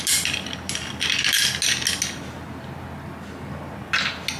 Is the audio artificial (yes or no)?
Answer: no